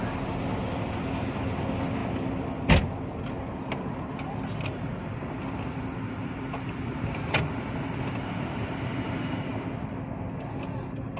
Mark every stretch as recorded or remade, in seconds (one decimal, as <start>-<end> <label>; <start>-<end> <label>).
0.0-11.2 recorded